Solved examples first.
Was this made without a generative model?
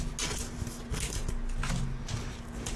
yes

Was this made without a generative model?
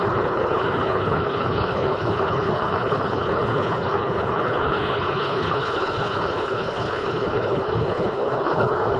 no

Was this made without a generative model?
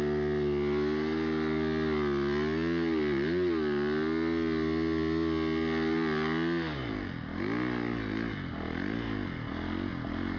yes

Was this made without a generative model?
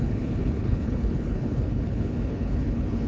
no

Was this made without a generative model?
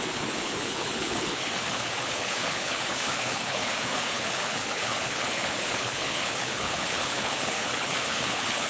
no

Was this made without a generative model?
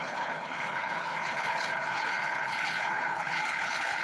no